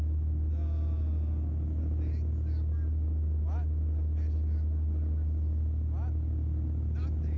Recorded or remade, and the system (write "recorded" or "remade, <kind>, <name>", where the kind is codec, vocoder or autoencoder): recorded